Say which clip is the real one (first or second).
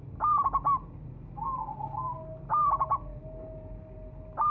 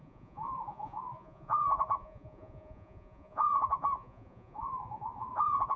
first